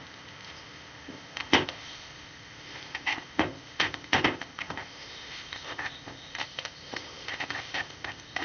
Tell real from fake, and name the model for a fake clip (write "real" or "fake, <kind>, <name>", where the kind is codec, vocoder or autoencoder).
fake, codec, ZipCodec